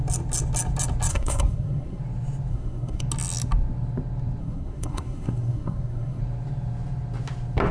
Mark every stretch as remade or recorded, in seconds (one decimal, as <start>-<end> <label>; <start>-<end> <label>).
0.0-1.1 recorded; 1.1-2.0 remade; 2.0-2.5 recorded; 2.5-3.0 remade; 3.0-4.4 recorded; 4.4-6.2 remade; 6.2-7.7 recorded